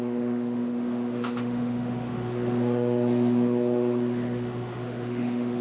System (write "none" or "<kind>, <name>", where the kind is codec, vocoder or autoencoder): autoencoder, DAC-VAE